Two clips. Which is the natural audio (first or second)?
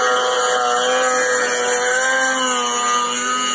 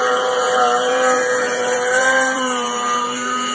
first